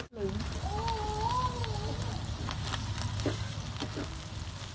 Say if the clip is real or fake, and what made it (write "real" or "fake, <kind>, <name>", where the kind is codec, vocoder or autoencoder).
real